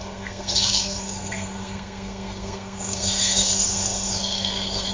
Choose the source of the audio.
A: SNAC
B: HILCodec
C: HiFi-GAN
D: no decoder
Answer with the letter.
A